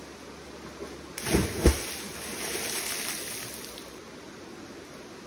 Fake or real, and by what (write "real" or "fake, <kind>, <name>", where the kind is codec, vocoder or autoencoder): real